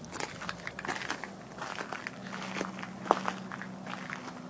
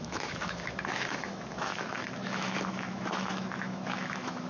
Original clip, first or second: first